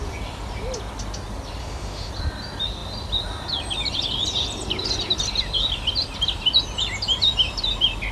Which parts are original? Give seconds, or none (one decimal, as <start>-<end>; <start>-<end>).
0.0-1.6; 2.1-8.1